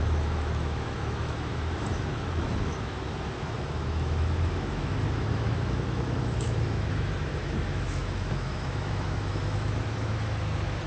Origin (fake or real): fake